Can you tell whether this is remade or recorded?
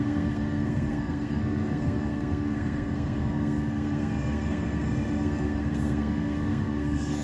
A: remade